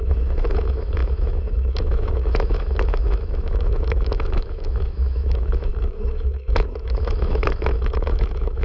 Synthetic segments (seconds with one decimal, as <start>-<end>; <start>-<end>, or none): 0.0-8.6